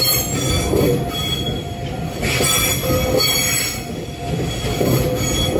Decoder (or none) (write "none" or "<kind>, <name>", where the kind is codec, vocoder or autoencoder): none